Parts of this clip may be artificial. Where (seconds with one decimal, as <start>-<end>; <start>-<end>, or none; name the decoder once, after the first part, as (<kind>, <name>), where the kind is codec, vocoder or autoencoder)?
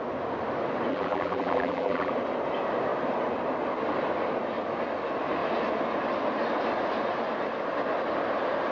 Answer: 0.9-2.1 (vocoder, BigVGAN v2)